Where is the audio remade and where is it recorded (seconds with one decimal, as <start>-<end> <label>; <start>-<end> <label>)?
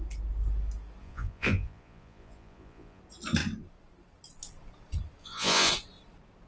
0.0-1.0 recorded; 1.0-3.0 remade; 3.0-5.2 recorded; 5.2-5.7 remade; 5.7-6.5 recorded